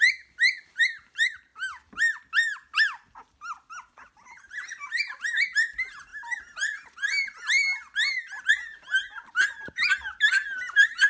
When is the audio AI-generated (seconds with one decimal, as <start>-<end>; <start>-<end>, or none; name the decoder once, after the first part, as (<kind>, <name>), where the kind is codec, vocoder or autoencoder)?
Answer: 0.0-1.5 (vocoder, BigVGAN v2); 3.7-6.1; 8.5-11.1